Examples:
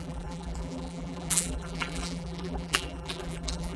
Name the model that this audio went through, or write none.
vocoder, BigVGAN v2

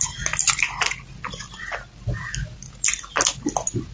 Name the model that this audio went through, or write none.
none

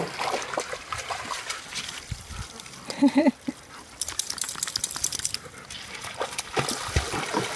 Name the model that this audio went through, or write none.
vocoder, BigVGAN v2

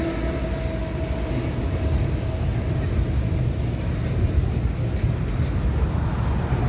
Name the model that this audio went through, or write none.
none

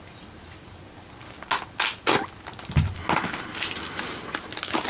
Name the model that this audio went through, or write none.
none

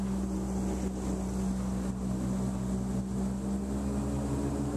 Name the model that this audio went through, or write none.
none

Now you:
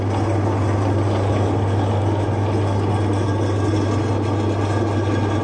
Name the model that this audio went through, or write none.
none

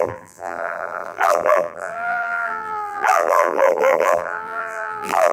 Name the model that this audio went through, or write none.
vocoder, BigVGAN v2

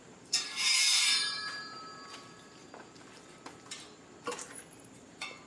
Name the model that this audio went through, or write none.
vocoder, BigVGAN v2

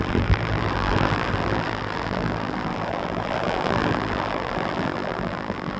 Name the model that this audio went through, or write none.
vocoder, BigVGAN v2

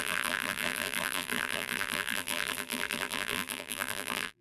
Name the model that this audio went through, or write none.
vocoder, BigVGAN v2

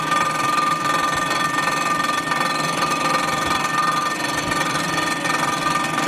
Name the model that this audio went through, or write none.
vocoder, BigVGAN v2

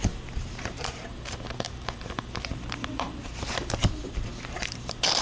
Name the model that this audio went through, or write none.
vocoder, BigVGAN v2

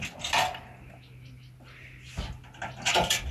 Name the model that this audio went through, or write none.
none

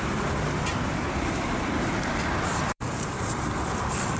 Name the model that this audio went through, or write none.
vocoder, BigVGAN v2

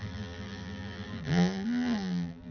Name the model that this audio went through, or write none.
vocoder, BigVGAN v2